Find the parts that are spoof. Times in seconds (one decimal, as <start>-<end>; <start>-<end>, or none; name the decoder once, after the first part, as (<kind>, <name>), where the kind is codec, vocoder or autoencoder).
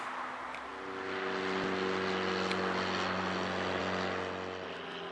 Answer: none